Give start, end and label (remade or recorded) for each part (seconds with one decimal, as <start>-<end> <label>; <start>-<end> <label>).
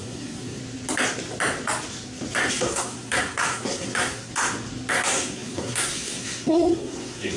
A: 0.0-0.6 remade; 0.6-2.5 recorded; 2.5-4.3 remade; 4.3-4.9 recorded; 4.9-7.4 remade